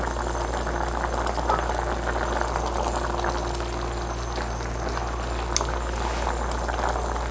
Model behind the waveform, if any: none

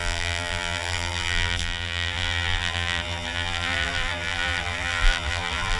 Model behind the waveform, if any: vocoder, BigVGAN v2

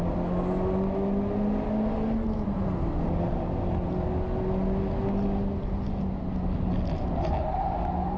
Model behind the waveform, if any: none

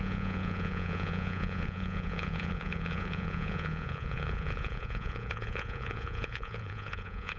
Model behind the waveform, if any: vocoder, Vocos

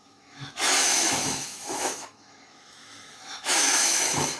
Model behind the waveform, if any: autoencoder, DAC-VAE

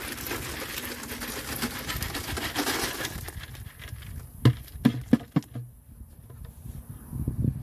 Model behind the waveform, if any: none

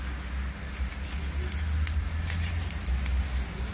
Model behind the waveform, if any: none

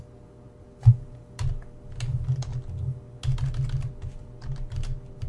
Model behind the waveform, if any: none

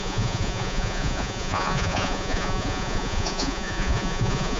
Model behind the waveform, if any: vocoder, Vocos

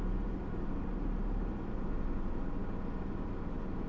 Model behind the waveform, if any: none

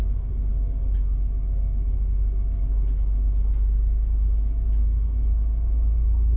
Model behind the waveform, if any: none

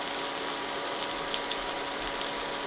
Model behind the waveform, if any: none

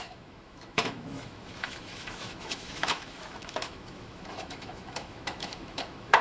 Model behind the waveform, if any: autoencoder, DAC-VAE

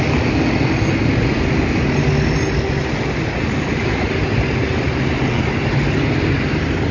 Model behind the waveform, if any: none